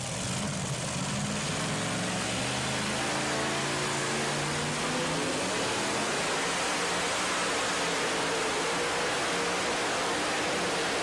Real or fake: real